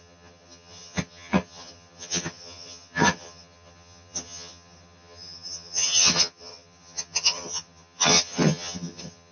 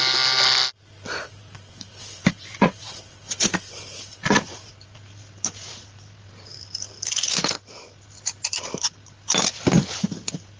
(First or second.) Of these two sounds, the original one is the second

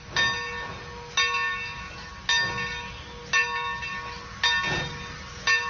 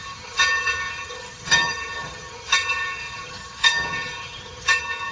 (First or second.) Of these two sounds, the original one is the first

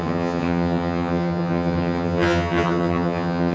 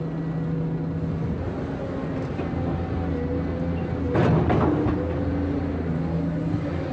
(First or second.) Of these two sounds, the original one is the second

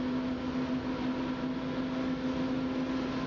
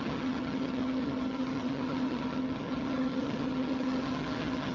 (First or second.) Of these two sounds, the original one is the first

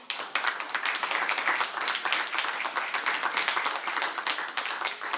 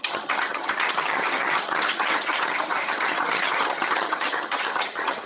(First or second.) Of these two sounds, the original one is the first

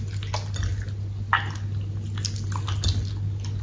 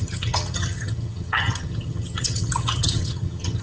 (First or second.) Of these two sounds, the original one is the first